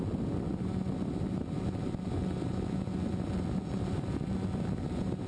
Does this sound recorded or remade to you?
recorded